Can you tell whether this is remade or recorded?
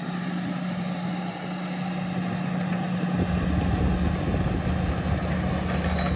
recorded